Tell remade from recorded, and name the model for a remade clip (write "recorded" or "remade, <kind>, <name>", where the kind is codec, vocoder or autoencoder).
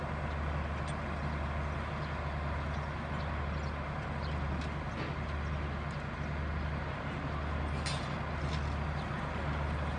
recorded